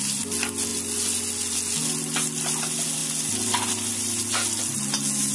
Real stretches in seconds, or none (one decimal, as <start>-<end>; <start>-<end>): 0.0-5.3